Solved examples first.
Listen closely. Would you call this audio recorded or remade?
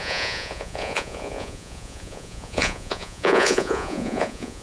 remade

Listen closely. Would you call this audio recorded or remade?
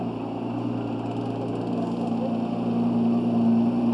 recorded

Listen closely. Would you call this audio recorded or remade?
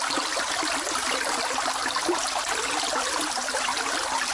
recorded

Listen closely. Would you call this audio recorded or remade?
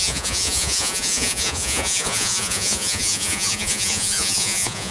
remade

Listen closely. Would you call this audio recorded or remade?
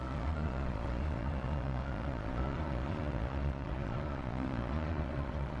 remade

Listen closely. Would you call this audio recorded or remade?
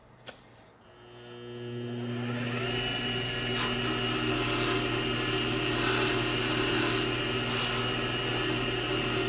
recorded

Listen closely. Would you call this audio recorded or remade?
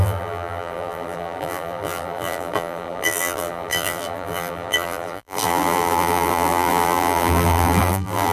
remade